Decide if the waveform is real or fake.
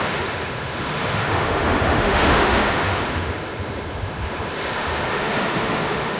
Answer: fake